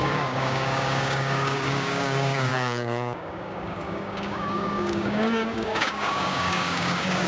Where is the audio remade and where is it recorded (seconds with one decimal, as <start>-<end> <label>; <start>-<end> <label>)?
0.0-7.3 remade

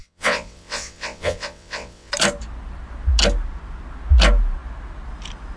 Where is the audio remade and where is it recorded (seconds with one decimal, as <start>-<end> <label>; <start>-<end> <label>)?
0.0-2.1 remade; 2.1-5.6 recorded

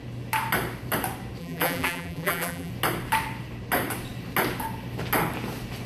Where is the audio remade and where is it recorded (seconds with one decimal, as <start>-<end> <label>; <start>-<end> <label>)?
0.0-1.4 recorded; 1.4-2.7 remade; 2.7-5.9 recorded

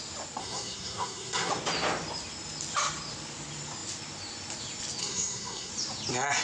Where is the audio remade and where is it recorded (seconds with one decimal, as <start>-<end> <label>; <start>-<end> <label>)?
0.0-0.4 recorded; 0.4-1.5 remade; 1.5-5.0 recorded; 5.0-5.7 remade; 5.7-6.4 recorded

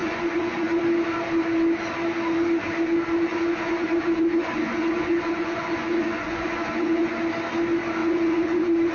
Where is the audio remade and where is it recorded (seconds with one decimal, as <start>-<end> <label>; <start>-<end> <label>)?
0.0-0.8 remade; 0.8-3.3 recorded; 3.3-7.2 remade; 7.2-8.0 recorded; 8.0-8.9 remade

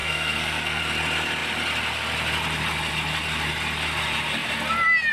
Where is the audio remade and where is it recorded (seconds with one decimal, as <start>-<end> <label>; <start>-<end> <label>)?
0.0-0.8 remade; 0.8-5.1 recorded

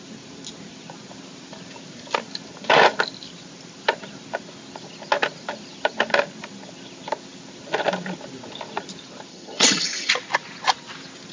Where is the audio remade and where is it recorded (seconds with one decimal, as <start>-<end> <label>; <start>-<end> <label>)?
0.0-9.3 recorded; 9.3-10.1 remade; 10.1-11.3 recorded

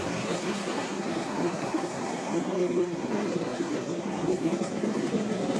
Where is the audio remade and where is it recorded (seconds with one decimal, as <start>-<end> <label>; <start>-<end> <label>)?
0.0-5.6 remade